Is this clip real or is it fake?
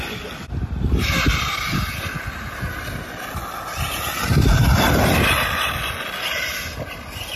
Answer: real